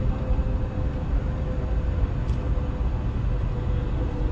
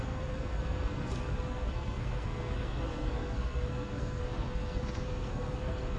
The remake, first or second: second